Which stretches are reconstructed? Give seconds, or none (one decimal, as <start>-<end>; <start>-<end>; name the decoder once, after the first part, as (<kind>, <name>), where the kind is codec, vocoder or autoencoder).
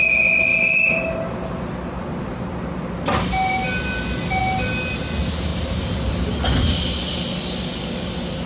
none